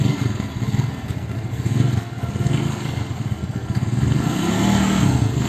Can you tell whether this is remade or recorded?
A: remade